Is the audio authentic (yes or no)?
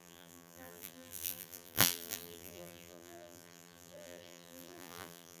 no